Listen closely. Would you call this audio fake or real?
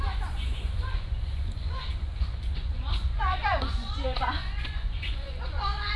fake